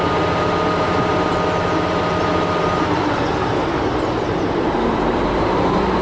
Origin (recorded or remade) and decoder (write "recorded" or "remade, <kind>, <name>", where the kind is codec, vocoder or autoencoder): remade, vocoder, BigVGAN v2